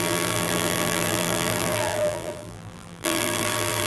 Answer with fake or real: fake